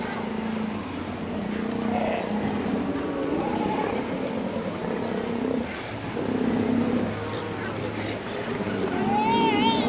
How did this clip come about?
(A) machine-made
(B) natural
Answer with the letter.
B